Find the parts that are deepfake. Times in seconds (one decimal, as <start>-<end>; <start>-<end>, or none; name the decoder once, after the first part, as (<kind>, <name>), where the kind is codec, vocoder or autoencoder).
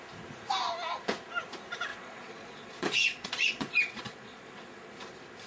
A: 1.9-4.9 (vocoder, Vocos)